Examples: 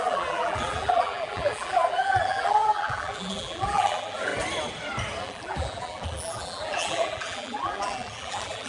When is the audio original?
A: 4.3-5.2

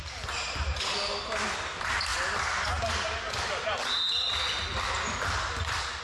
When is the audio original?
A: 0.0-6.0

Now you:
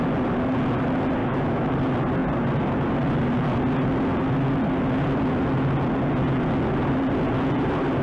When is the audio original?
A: 0.0-1.2; 1.7-8.0